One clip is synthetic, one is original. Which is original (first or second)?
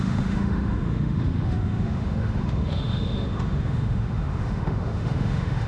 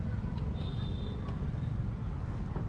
second